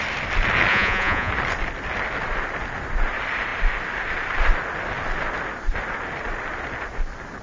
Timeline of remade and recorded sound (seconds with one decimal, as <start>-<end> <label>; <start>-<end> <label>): 0.0-0.7 recorded; 0.7-1.3 remade; 1.3-7.4 recorded

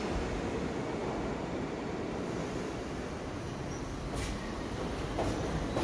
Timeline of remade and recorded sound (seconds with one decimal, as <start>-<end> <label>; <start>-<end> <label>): 0.0-5.8 recorded

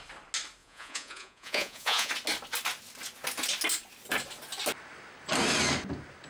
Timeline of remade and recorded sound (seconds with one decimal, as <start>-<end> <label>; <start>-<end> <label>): 0.0-0.6 recorded; 0.6-2.1 remade; 2.1-6.3 recorded